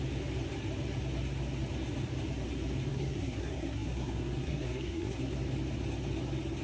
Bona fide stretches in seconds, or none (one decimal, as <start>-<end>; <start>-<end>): 0.0-2.9; 5.3-6.6